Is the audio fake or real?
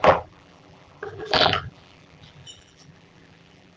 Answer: fake